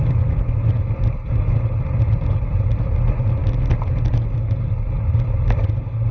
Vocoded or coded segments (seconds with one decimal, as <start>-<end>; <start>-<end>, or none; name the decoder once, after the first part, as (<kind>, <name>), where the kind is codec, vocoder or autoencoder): none